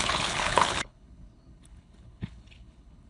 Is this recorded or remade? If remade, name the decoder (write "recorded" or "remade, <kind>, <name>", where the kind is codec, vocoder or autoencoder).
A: remade, codec, HILCodec